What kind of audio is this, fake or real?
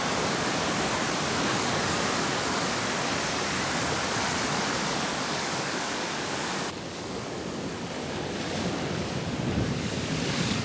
fake